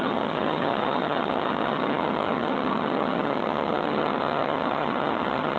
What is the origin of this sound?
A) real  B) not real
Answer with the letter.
B